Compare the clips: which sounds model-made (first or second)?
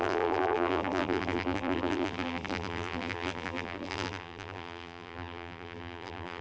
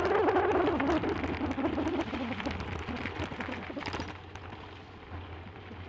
first